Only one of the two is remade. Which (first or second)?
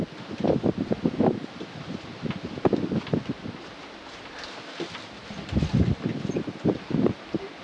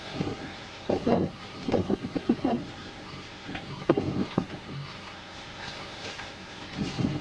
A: second